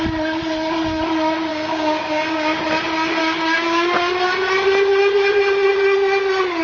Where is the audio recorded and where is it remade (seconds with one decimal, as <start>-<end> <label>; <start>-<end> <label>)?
0.0-1.5 recorded; 1.5-2.6 remade; 2.6-3.2 recorded; 3.2-4.1 remade; 4.1-6.6 recorded